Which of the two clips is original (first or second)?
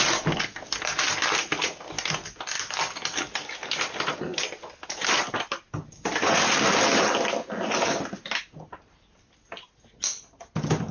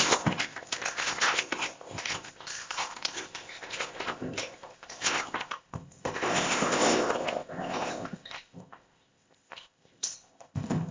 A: first